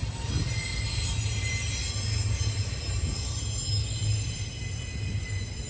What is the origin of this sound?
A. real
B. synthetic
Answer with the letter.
A